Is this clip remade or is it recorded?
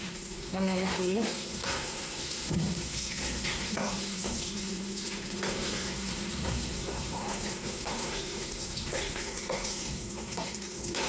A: remade